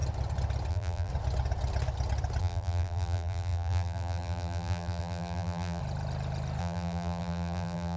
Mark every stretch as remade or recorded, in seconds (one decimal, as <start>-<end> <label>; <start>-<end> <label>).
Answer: 0.0-0.7 recorded; 0.7-1.1 remade; 1.1-2.4 recorded; 2.4-5.8 remade; 5.8-6.6 recorded; 6.6-8.0 remade